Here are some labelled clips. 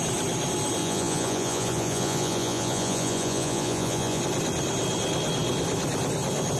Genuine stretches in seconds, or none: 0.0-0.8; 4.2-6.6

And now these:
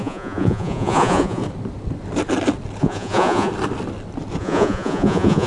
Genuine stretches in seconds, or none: 1.4-2.8; 3.5-4.4

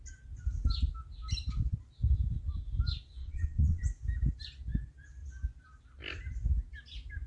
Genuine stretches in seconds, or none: 0.0-3.2; 3.8-7.3

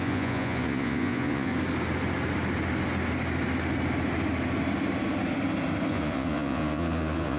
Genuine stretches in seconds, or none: 1.5-5.9

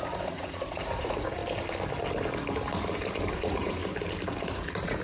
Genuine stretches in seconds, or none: 1.4-3.3; 3.8-4.4

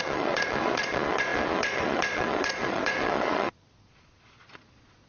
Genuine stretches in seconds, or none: none

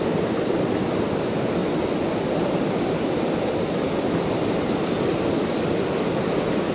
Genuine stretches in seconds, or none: 0.0-6.7